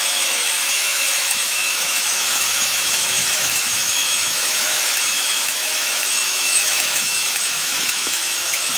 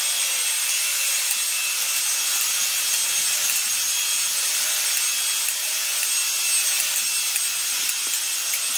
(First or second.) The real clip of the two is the second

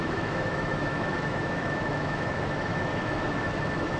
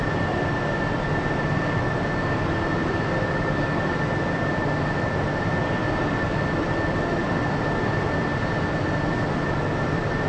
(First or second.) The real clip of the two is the second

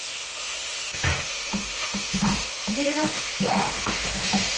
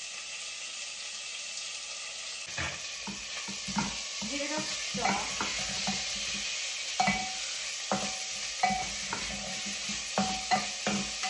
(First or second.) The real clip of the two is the second